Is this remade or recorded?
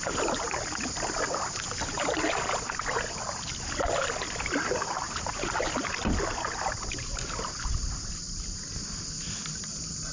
recorded